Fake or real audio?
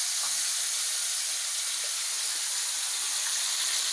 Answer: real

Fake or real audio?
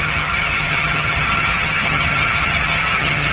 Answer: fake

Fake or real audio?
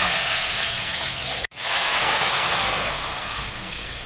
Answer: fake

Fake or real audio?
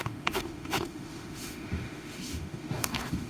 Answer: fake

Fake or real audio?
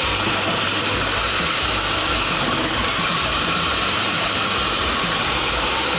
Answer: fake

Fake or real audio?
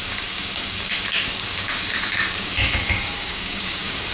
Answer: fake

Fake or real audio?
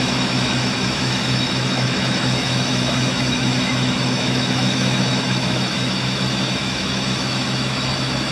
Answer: fake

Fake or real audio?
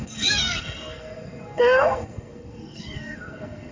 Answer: fake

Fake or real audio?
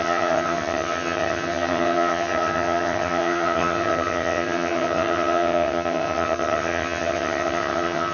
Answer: fake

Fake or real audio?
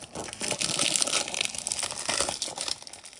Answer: real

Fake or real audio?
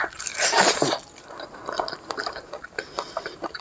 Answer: real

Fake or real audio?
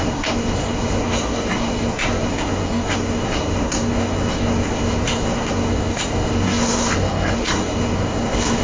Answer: fake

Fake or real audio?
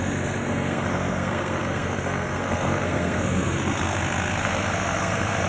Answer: fake